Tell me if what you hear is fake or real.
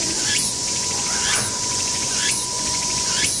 fake